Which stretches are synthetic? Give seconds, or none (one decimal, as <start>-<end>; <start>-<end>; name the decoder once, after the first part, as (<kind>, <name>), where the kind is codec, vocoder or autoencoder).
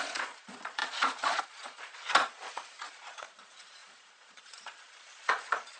0.0-5.8 (vocoder, Vocos)